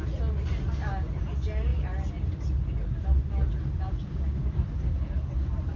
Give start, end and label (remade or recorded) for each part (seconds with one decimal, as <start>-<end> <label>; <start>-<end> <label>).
0.0-5.8 recorded

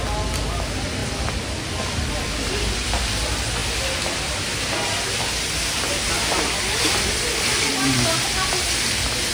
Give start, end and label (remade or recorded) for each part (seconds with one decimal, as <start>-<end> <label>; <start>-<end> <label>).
0.0-9.3 recorded

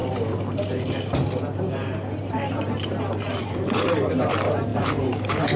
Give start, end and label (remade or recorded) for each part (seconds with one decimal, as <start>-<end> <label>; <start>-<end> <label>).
0.0-3.4 recorded; 3.4-5.6 remade